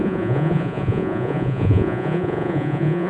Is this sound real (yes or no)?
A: no